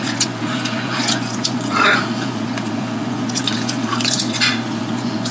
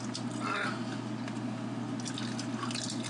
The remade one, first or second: first